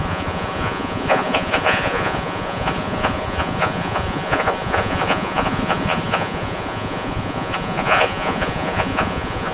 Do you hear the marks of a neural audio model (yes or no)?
yes